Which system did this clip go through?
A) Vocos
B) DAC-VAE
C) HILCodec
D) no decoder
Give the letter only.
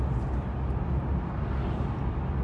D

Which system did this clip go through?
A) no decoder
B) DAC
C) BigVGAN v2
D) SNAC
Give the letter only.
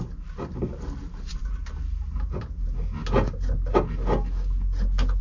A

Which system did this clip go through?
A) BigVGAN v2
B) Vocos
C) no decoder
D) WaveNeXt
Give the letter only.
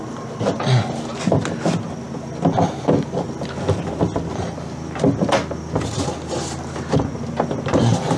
C